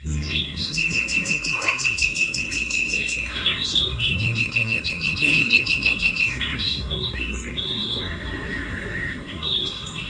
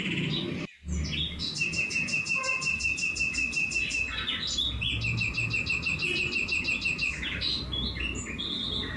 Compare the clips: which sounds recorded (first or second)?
second